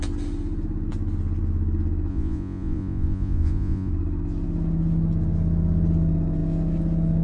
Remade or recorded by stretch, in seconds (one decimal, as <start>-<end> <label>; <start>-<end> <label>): 0.0-2.1 recorded; 2.1-3.9 remade; 3.9-7.2 recorded